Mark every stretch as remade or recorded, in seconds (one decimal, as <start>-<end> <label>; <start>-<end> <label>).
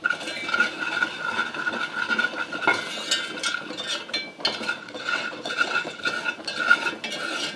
0.0-4.8 recorded; 4.8-6.0 remade; 6.0-7.6 recorded